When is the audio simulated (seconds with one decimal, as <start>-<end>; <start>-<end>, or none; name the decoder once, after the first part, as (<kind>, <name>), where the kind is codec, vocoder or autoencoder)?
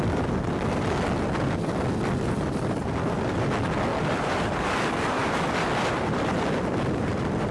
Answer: none